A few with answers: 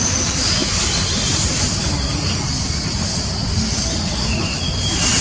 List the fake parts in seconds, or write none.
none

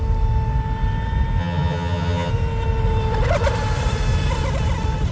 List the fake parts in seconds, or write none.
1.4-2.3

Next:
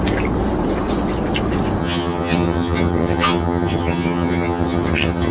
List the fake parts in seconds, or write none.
1.8-5.3